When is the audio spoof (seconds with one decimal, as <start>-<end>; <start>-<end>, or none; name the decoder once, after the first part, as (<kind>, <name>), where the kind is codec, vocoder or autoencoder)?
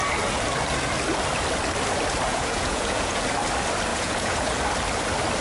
2.3-3.2 (vocoder, Vocos); 3.9-4.5